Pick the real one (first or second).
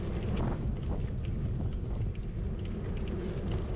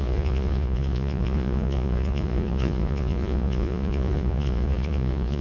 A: first